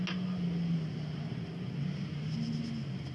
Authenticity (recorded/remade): recorded